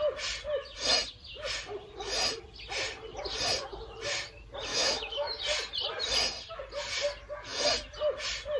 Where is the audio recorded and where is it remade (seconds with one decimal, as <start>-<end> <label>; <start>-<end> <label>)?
0.0-4.7 recorded; 4.7-5.4 remade; 5.4-8.6 recorded

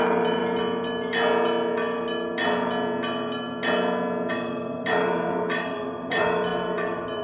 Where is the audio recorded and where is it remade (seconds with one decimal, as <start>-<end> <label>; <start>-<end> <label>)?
0.0-0.4 remade; 0.4-4.3 recorded; 4.3-7.2 remade

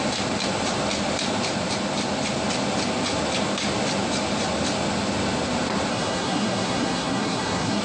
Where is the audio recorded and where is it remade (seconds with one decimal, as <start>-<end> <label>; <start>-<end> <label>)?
0.0-5.9 recorded; 5.9-7.8 remade

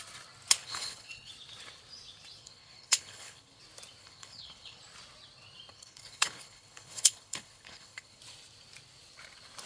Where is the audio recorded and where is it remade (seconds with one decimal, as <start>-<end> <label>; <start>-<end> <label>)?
0.0-0.6 recorded; 0.6-1.3 remade; 1.3-2.4 recorded; 2.4-3.6 remade; 3.6-4.0 recorded; 4.0-4.8 remade; 4.8-5.7 recorded; 5.7-8.2 remade; 8.2-9.7 recorded

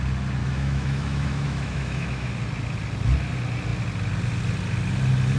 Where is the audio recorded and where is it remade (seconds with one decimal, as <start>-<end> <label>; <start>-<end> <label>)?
0.0-0.4 recorded; 0.4-2.3 remade; 2.3-5.4 recorded

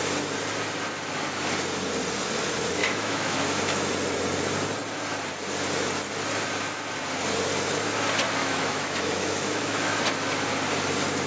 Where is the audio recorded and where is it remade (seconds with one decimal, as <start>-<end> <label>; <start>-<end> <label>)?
0.0-2.8 recorded; 2.8-3.9 remade; 3.9-8.4 recorded; 8.4-10.0 remade; 10.0-11.3 recorded

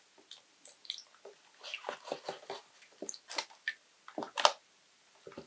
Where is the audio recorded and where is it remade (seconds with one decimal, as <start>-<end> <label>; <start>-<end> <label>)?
0.0-5.5 recorded

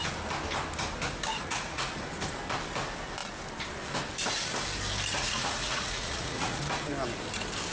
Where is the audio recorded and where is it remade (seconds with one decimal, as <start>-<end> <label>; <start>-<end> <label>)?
0.0-1.3 recorded; 1.3-1.9 remade; 1.9-5.1 recorded; 5.1-6.6 remade; 6.6-7.7 recorded